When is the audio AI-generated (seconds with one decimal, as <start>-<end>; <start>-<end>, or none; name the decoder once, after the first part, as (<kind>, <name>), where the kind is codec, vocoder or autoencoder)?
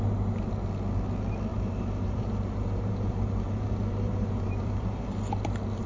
1.5-5.0 (vocoder, BigVGAN v2)